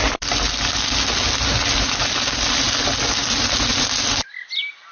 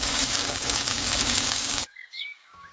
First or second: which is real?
first